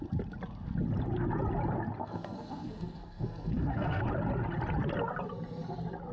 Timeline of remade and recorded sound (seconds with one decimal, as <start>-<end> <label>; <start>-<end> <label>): 0.0-2.0 recorded; 2.0-4.0 remade; 4.0-6.1 recorded